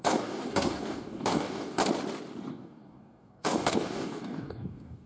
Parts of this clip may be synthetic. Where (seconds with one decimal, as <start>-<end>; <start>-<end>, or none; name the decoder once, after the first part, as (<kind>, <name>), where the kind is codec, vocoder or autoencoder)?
0.0-1.8 (codec, DAC); 2.5-5.1